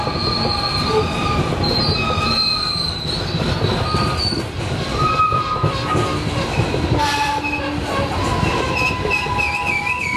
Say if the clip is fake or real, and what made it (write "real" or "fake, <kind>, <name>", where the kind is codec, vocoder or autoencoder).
real